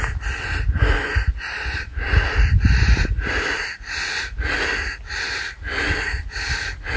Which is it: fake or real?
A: real